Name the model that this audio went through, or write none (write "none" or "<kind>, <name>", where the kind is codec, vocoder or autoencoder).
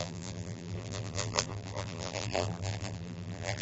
vocoder, BigVGAN v2